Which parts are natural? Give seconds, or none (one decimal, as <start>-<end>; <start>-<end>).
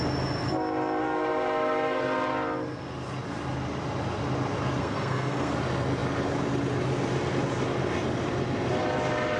0.0-1.0; 2.0-4.8; 5.5-9.4